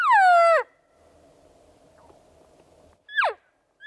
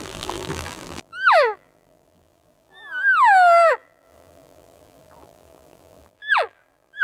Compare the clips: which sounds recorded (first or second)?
first